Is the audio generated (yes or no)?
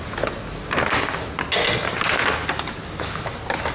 no